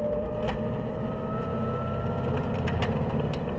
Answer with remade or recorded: recorded